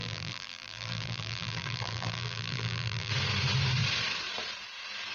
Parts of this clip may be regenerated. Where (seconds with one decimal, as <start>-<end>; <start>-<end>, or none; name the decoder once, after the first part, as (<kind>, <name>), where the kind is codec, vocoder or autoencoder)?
0.0-3.1 (vocoder, BigVGAN v2)

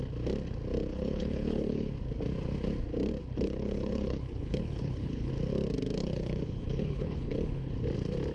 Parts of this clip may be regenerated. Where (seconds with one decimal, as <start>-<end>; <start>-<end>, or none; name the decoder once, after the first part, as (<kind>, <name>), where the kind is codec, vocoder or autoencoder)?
0.9-1.9 (codec, HILCodec); 3.2-5.3; 6.0-7.7

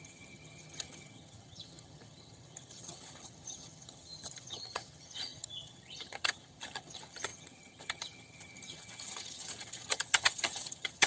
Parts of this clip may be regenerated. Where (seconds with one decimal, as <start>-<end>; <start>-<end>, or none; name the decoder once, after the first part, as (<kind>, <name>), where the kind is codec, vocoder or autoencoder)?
0.0-11.1 (vocoder, HiFi-GAN)